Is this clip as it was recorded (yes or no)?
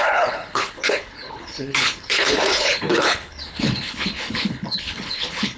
no